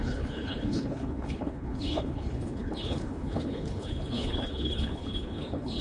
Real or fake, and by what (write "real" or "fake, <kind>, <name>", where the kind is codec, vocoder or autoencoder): fake, codec, HILCodec